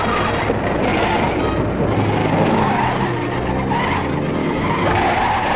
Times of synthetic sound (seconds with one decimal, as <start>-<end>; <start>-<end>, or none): 2.2-2.9; 4.4-5.0